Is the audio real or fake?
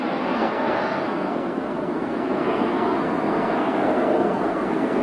fake